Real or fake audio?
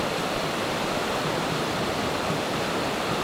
real